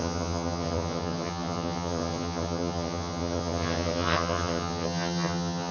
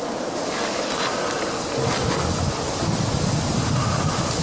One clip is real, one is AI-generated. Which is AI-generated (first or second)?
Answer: first